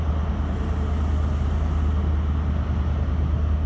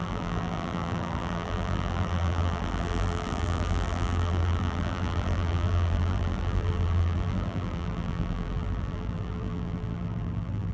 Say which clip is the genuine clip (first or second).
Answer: first